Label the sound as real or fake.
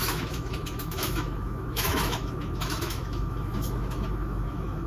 fake